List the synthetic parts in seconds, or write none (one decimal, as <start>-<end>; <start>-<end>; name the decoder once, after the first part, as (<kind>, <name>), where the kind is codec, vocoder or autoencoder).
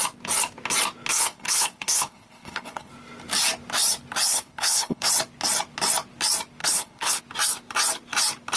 1.1-2.9 (codec, HILCodec); 4.3-5.1; 6.6-7.2